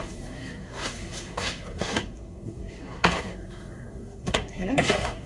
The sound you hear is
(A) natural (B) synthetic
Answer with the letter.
B